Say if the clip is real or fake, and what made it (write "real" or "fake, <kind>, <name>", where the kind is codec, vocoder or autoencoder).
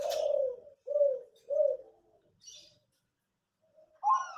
real